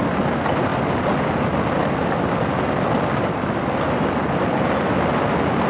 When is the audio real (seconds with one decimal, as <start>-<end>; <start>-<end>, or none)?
0.0-5.7